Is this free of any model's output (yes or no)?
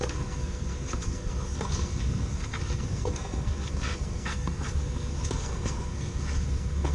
no